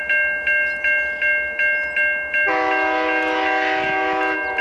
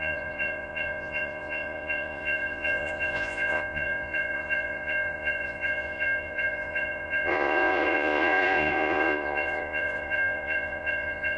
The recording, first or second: first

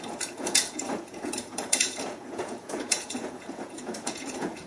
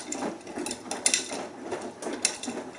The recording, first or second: second